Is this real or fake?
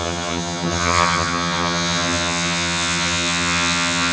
fake